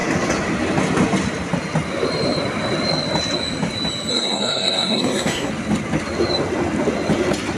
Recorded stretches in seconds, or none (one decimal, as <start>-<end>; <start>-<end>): 0.0-4.1; 5.5-7.6